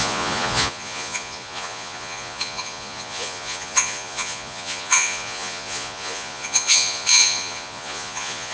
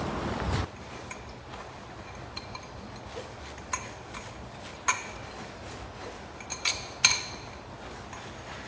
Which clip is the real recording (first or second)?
second